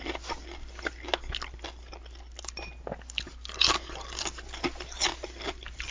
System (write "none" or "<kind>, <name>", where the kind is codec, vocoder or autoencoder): none